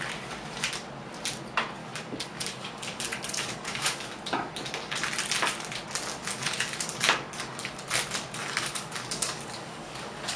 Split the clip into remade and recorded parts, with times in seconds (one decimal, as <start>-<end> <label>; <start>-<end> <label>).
0.0-1.8 recorded; 1.8-4.1 remade; 4.1-6.2 recorded; 6.2-7.9 remade; 7.9-8.4 recorded; 8.4-10.4 remade